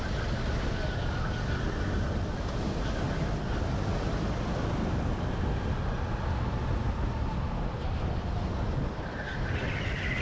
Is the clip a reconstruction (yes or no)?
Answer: no